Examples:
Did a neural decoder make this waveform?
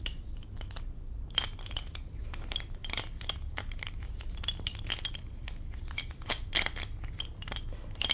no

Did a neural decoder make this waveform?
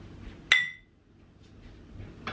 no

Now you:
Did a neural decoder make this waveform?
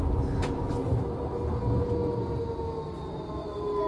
no